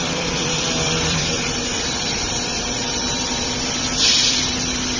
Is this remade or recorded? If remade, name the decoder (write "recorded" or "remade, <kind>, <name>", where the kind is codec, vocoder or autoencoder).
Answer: remade, vocoder, BigVGAN v2